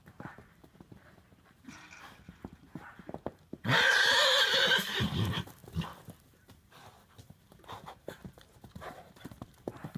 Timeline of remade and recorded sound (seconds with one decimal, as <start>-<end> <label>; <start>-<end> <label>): 0.0-5.6 remade; 5.6-6.8 recorded; 6.8-10.0 remade